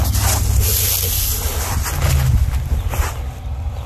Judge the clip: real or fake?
real